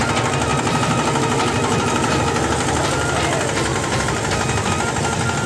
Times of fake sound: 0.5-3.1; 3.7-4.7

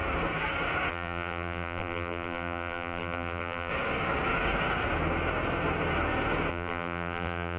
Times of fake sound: 0.9-3.7; 6.5-7.6

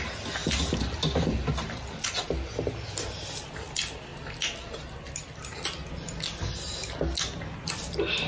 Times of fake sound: 0.4-1.5

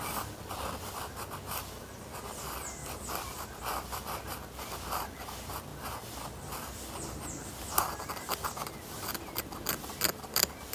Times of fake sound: 2.8-3.6

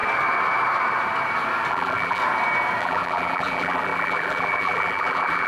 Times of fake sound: 1.7-2.2; 2.8-5.5

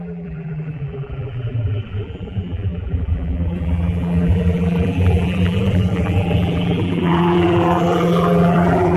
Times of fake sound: 0.0-9.0

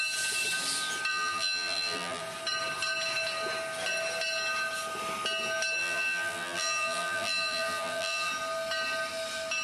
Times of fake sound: 1.1-2.2; 5.8-8.3

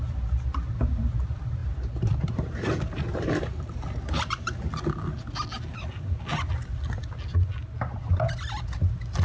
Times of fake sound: 1.6-4.3